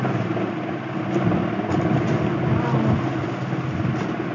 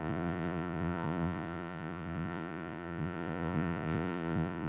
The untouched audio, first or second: first